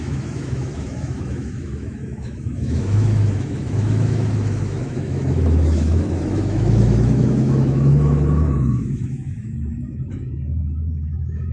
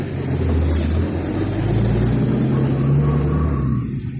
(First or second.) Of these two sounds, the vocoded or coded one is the first